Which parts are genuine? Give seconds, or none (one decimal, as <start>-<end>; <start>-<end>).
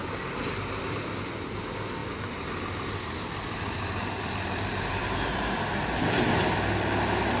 0.0-7.4